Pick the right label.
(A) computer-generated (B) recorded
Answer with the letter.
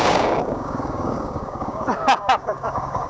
A